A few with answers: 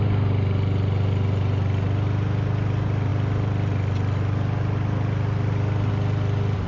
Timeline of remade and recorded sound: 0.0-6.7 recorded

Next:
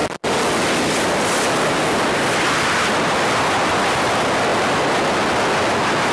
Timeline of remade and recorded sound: 0.0-6.1 recorded

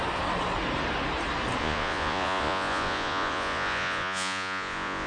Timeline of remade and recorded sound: 0.0-1.6 recorded; 1.6-5.1 remade

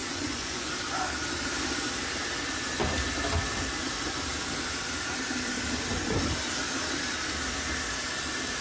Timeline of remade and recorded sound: 0.0-0.7 remade; 0.7-8.6 recorded

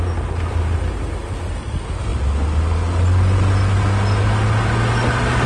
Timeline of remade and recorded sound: 0.0-5.5 recorded

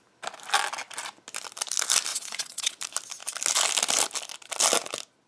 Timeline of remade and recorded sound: 0.0-2.1 recorded; 2.1-2.8 remade; 2.8-5.3 recorded

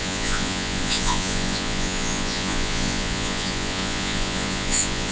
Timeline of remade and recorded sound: 0.0-5.1 remade